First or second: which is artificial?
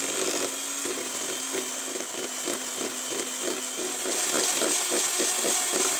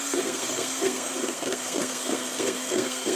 second